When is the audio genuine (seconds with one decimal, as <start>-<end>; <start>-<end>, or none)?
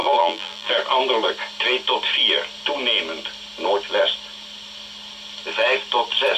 0.7-6.4